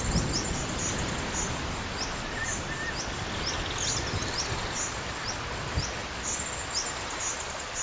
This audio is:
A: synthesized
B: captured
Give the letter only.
B